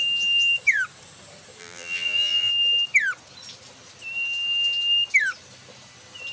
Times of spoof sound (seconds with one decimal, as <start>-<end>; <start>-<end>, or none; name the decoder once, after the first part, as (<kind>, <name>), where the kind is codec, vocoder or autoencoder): 1.6-2.5 (vocoder, BigVGAN v2)